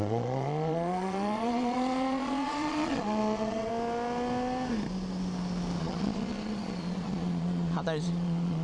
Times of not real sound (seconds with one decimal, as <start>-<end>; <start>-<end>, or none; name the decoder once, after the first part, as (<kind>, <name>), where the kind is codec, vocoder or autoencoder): 0.0-3.7 (vocoder, Vocos); 5.8-8.6